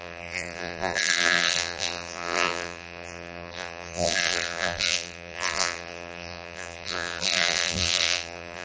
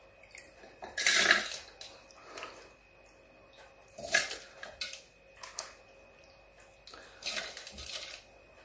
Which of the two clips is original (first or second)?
second